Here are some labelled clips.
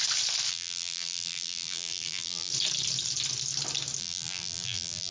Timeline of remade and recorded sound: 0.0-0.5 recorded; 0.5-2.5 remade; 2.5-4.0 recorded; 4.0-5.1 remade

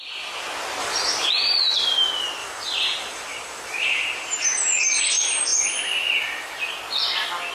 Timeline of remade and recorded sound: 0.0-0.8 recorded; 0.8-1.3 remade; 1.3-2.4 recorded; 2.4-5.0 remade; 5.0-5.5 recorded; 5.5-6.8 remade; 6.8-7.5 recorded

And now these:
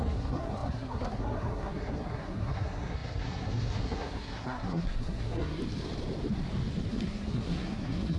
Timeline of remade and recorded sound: 0.0-5.6 remade; 5.6-6.9 recorded; 6.9-8.2 remade

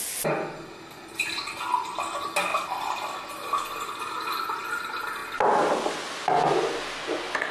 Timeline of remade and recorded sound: 0.0-7.5 recorded